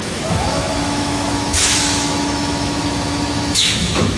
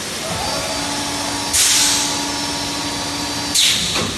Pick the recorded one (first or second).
second